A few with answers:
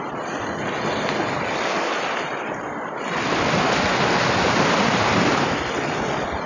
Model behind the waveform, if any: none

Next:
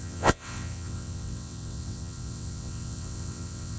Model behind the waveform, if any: vocoder, WaveNeXt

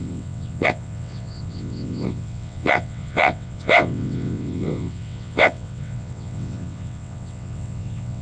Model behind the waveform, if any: vocoder, WaveNeXt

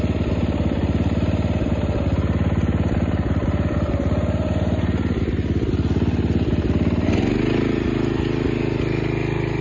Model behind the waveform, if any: none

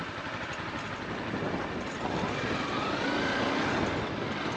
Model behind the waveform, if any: none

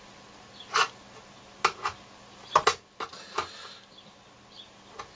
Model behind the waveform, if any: none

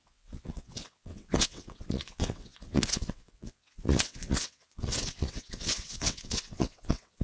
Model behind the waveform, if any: vocoder, WaveNeXt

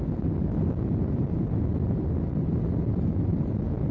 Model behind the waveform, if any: none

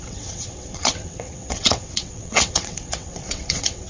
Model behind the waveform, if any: vocoder, WaveNeXt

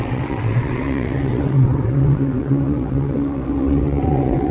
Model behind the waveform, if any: vocoder, WaveNeXt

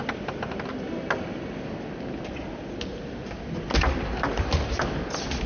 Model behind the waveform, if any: none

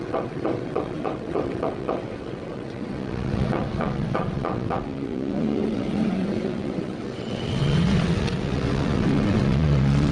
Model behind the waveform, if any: vocoder, WaveNeXt